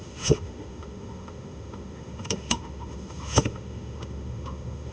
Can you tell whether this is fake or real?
fake